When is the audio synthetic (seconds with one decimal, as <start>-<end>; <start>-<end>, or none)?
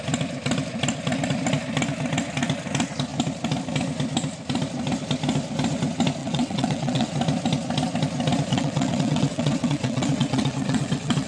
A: 6.2-7.1; 8.5-11.3